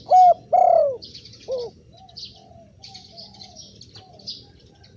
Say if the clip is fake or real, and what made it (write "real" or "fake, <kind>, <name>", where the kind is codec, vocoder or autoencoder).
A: real